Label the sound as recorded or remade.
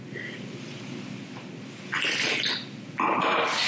recorded